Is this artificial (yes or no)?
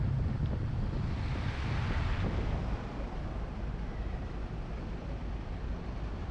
yes